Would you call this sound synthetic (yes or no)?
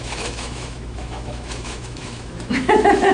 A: yes